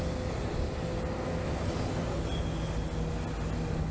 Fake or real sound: real